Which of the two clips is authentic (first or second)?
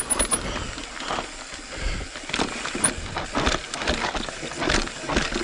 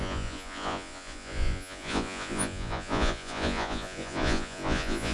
first